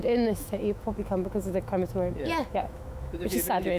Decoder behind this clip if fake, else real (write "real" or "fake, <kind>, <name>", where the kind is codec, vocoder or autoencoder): fake, autoencoder, DAC-VAE